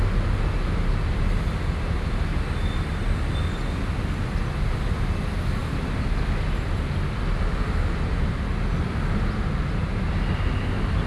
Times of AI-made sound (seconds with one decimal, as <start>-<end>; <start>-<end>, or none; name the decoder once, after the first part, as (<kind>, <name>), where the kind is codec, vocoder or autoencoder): none

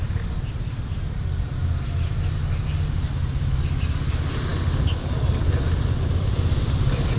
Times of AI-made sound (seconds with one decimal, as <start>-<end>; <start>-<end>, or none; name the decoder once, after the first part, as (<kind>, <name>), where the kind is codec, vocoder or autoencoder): 4.5-7.2 (vocoder, BigVGAN v2)

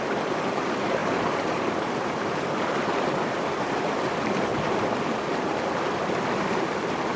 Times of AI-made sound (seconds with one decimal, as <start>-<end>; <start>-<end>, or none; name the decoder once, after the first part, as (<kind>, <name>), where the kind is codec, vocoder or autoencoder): 0.0-1.0 (vocoder, BigVGAN v2); 2.8-4.5; 6.5-7.2

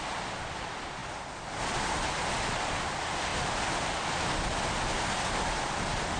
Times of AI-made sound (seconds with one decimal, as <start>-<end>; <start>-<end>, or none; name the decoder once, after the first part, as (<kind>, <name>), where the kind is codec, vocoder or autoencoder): 3.3-4.4 (vocoder, BigVGAN v2)

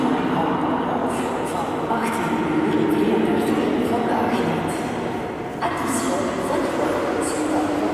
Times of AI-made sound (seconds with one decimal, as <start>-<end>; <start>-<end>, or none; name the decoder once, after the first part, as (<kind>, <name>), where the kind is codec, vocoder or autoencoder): none

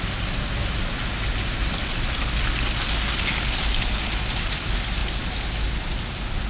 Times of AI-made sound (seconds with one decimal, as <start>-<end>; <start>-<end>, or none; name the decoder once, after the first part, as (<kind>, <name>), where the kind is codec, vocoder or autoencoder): none

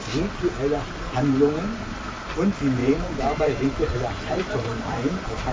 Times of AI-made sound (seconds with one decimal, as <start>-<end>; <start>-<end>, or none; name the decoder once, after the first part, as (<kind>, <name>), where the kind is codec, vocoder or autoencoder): 2.8-5.5 (vocoder, BigVGAN v2)